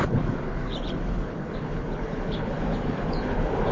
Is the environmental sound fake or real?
fake